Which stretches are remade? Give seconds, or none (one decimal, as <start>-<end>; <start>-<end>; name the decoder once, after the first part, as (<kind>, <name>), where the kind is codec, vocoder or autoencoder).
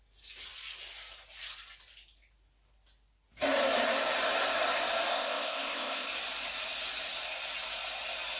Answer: 5.1-6.1 (codec, ZipCodec)